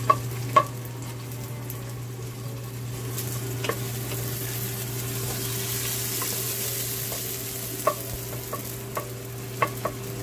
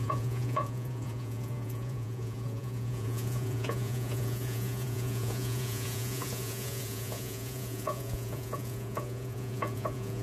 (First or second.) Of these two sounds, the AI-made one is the second